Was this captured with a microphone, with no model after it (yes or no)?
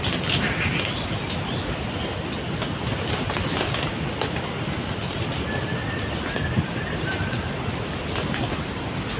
yes